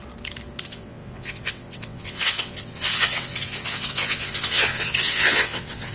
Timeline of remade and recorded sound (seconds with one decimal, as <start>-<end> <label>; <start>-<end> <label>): 0.0-0.6 recorded; 0.6-5.9 remade